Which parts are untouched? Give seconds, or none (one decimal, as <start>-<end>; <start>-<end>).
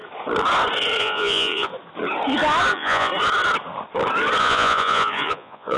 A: 0.0-1.0; 1.7-2.7; 3.1-4.4